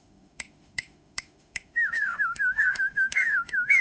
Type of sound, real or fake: fake